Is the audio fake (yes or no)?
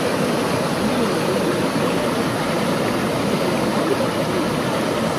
no